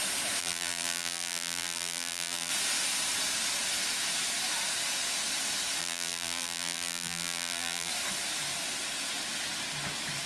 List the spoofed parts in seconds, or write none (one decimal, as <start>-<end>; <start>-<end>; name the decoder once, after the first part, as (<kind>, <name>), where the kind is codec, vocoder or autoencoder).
0.4-2.5 (vocoder, BigVGAN v2); 5.8-7.9